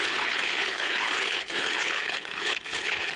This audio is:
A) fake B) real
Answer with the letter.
A